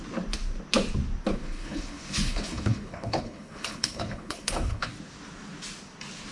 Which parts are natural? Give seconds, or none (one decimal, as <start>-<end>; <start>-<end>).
0.0-1.3; 4.9-6.3